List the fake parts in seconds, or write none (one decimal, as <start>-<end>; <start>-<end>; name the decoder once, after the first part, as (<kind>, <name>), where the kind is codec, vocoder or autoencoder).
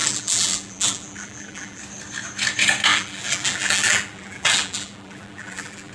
0.0-1.8 (vocoder, BigVGAN v2); 2.9-5.9